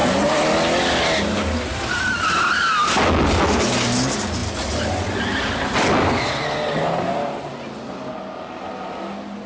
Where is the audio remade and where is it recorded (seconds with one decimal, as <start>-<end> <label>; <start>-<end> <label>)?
0.0-9.5 recorded